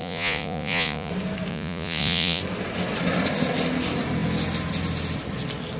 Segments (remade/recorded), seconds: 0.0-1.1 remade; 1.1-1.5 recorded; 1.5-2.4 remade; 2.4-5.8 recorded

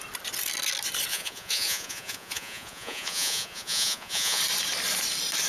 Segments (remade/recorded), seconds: 0.0-1.1 recorded; 1.1-4.4 remade; 4.4-5.5 recorded